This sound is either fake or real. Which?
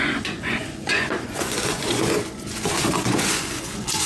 fake